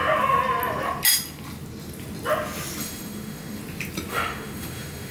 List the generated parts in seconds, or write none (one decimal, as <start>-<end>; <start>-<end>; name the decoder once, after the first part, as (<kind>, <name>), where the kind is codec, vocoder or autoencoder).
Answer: 2.8-3.6 (autoencoder, DAC-VAE); 4.1-5.1